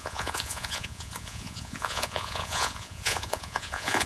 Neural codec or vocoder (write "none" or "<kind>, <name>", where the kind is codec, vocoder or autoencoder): vocoder, Vocos